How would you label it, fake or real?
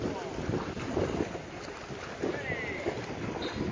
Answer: real